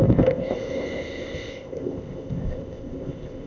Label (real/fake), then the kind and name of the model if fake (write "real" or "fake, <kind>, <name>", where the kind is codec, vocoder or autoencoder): fake, codec, ZipCodec